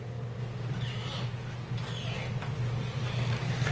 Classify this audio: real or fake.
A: real